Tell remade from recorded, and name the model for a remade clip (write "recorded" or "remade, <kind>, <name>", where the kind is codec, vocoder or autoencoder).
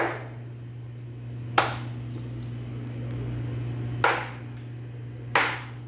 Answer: recorded